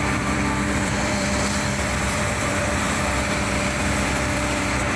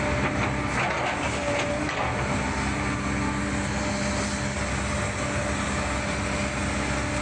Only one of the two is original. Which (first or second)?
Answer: second